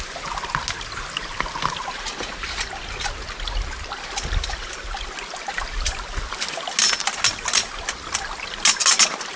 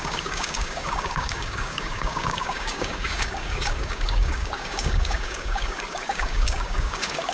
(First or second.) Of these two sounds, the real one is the first